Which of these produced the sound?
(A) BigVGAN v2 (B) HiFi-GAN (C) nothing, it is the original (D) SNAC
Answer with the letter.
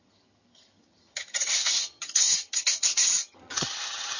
B